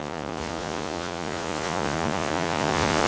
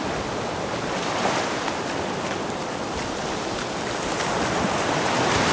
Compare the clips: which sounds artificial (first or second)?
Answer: first